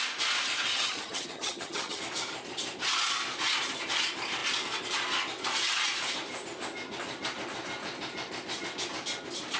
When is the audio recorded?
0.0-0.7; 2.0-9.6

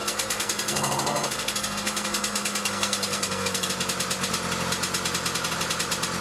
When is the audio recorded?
3.7-6.2

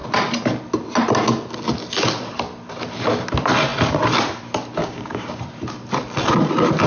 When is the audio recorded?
0.0-4.8; 5.4-6.9